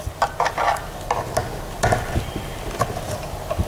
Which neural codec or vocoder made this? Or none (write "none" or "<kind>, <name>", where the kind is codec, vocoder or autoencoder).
none